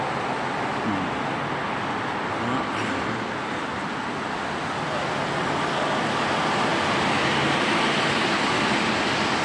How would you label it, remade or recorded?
recorded